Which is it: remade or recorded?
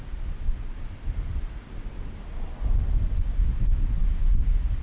recorded